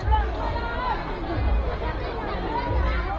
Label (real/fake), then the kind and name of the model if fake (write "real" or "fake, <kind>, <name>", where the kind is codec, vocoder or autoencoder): real